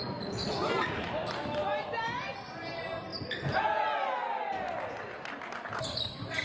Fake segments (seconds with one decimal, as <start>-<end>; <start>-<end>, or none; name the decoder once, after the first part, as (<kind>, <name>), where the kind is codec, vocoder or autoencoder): none